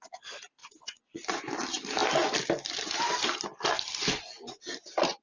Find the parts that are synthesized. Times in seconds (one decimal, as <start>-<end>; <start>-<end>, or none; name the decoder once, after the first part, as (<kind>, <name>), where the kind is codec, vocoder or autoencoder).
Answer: 0.6-1.5 (vocoder, Vocos)